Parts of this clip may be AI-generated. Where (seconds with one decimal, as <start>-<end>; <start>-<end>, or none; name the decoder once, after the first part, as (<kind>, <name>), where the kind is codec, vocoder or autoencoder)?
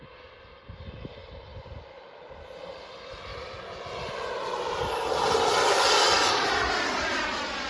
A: 5.6-6.5 (codec, DAC)